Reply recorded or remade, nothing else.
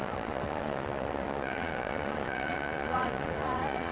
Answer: remade